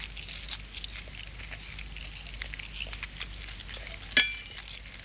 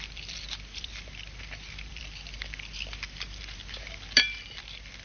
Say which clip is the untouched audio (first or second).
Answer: first